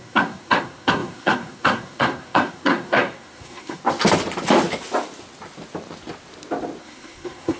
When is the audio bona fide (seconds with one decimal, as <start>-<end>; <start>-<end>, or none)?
3.8-6.8